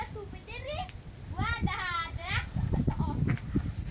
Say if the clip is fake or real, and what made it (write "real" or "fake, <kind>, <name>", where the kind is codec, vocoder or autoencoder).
real